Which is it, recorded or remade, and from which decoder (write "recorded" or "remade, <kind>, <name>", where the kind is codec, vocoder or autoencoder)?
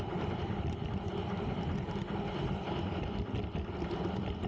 recorded